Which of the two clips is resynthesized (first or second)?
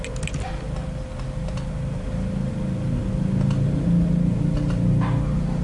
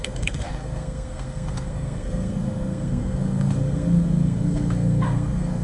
second